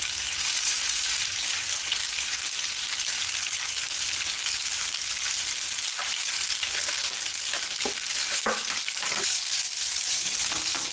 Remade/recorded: remade